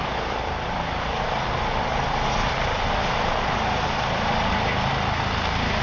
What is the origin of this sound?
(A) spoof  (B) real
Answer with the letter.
B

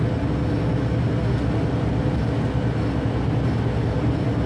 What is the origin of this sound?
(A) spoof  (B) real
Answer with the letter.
B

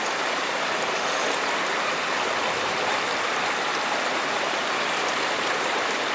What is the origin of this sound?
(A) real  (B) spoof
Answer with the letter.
A